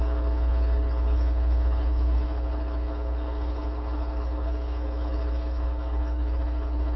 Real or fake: fake